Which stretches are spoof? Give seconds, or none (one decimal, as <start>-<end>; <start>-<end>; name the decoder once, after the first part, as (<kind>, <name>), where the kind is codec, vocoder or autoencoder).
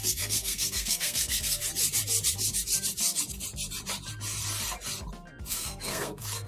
0.0-1.6 (codec, SNAC); 5.5-6.5